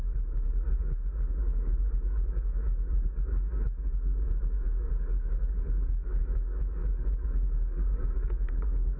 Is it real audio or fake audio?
fake